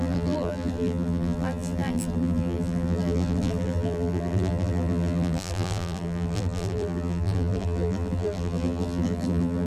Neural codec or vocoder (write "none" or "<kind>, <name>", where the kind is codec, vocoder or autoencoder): vocoder, BigVGAN v2